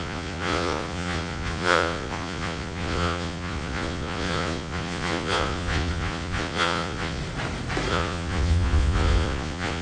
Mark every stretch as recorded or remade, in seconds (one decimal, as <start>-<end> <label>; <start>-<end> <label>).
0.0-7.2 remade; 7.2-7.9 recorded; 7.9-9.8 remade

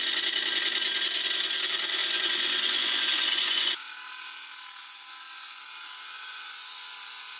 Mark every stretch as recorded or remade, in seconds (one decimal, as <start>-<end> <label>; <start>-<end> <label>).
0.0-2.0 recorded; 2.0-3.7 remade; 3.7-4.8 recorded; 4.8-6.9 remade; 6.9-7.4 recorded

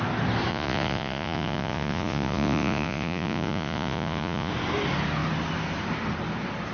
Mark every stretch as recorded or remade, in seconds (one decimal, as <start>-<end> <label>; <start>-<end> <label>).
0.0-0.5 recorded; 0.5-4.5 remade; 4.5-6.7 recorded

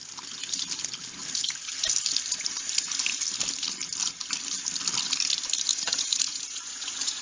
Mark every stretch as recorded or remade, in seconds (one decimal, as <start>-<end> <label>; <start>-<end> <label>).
0.0-5.7 recorded; 5.7-7.2 remade

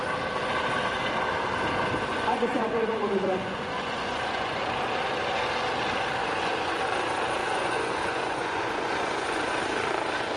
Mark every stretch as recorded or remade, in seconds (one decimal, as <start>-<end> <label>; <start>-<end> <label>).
0.0-2.1 recorded; 2.1-4.6 remade; 4.6-6.2 recorded; 6.2-6.8 remade; 6.8-7.4 recorded; 7.4-9.6 remade; 9.6-10.4 recorded